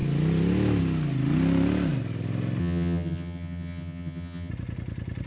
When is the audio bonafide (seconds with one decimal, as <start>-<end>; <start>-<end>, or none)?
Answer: 0.0-2.6; 4.5-5.3